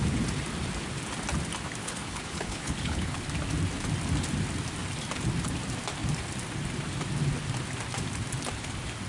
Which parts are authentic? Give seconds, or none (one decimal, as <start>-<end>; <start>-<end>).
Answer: 0.0-1.8; 3.2-9.1